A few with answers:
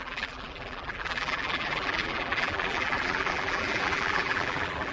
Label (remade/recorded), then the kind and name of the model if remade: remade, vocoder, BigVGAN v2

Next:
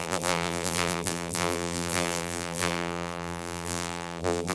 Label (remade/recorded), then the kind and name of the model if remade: remade, vocoder, BigVGAN v2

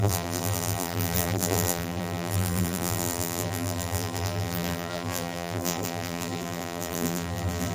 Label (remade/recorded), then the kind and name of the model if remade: remade, vocoder, BigVGAN v2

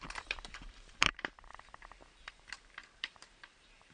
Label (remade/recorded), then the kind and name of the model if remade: remade, vocoder, BigVGAN v2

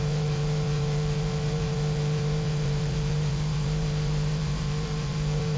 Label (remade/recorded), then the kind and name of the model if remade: remade, vocoder, BigVGAN v2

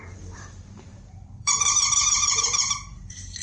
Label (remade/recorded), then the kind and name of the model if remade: remade, vocoder, BigVGAN v2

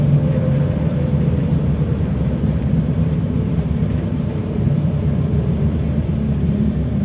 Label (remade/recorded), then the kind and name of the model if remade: remade, vocoder, BigVGAN v2